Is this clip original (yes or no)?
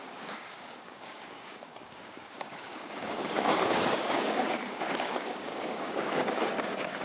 no